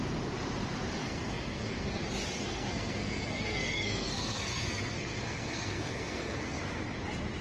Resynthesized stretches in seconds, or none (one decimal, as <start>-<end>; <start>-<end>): 1.0-2.0; 2.4-6.8